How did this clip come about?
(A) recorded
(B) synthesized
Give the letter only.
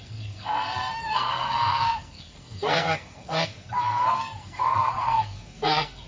B